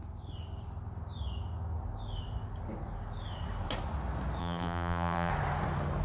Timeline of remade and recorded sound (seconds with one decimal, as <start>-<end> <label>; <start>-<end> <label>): 0.0-4.4 recorded; 4.4-5.3 remade; 5.3-6.0 recorded